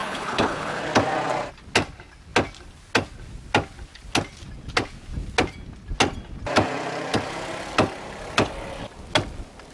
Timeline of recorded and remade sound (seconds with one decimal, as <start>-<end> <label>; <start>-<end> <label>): 0.0-0.8 remade; 0.8-9.7 recorded